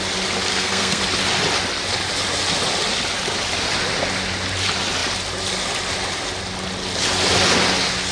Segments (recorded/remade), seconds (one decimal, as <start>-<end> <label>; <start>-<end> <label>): 0.0-0.5 recorded; 0.5-1.0 remade; 1.0-8.1 recorded